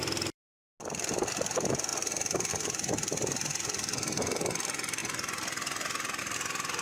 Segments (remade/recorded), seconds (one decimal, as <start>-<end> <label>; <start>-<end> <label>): 0.0-0.4 remade; 0.4-1.3 recorded; 1.3-1.9 remade; 1.9-2.5 recorded; 2.5-5.0 remade; 5.0-6.2 recorded; 6.2-6.8 remade